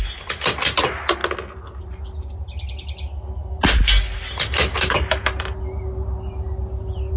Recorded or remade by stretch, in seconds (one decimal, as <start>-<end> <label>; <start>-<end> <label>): 0.0-7.2 recorded